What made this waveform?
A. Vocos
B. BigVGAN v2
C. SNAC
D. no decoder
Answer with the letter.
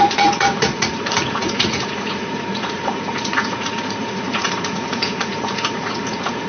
A